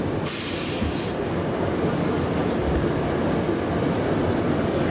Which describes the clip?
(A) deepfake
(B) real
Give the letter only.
B